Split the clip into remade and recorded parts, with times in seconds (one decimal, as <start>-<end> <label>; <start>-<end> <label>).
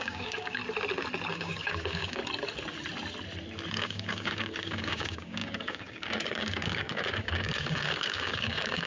0.0-0.6 remade; 0.6-1.3 recorded; 1.3-2.2 remade; 2.2-3.7 recorded; 3.7-8.9 remade